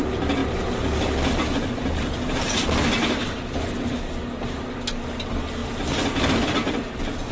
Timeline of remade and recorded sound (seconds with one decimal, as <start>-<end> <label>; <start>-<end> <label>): 0.0-7.3 recorded